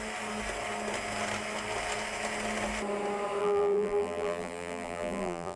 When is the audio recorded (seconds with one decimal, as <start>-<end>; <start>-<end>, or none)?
0.0-3.4